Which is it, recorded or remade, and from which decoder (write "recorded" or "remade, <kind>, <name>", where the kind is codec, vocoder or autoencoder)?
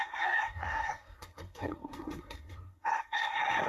remade, codec, SNAC